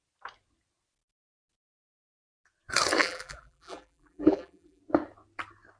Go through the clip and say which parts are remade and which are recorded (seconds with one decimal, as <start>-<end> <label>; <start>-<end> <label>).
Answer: 0.0-3.0 recorded; 3.0-4.8 remade; 4.8-5.8 recorded